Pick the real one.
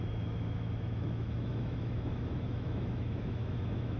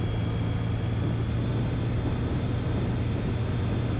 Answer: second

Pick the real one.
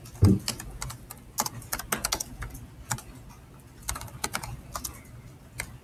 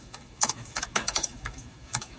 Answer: first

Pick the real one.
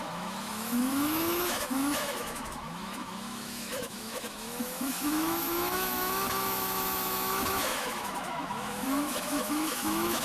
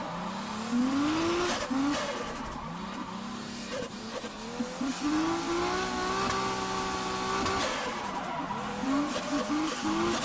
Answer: second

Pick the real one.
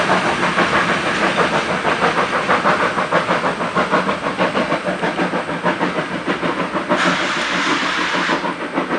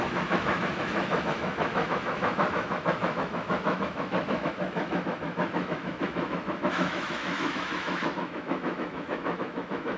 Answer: first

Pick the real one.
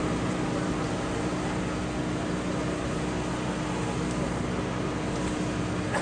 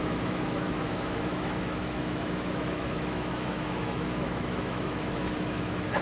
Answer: first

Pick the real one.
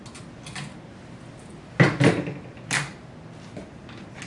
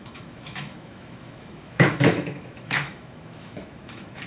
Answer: first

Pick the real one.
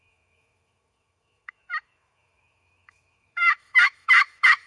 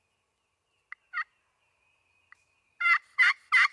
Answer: second